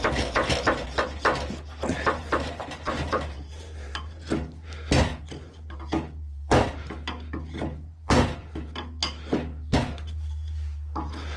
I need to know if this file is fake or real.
real